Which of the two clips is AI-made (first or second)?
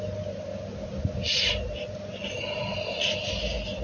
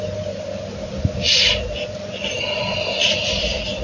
second